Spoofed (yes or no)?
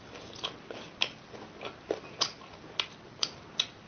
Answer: no